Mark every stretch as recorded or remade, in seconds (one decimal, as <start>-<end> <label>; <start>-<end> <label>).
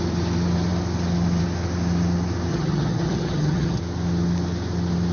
0.0-2.5 recorded; 2.5-3.8 remade; 3.8-5.1 recorded